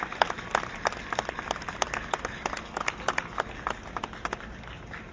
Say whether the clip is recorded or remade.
recorded